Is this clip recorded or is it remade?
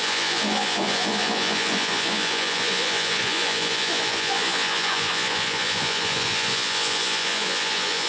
remade